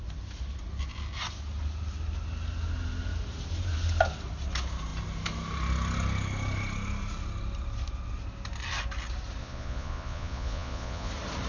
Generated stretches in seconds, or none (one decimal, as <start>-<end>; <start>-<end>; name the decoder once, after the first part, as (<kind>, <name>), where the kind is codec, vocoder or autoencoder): 9.4-11.1 (vocoder, Vocos)